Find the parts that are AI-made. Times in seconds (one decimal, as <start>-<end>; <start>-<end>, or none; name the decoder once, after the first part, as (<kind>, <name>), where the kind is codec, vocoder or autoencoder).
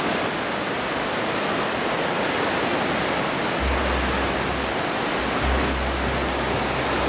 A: none